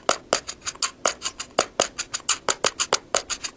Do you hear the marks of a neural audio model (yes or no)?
no